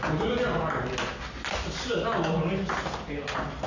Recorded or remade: recorded